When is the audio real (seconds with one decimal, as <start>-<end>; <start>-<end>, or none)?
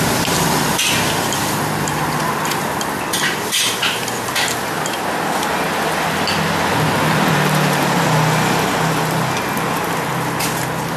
0.0-11.0